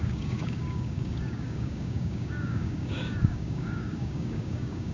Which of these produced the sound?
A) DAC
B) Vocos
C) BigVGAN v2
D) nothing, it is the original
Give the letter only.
A